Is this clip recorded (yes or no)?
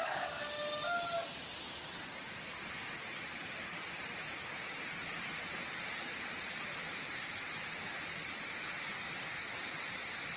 yes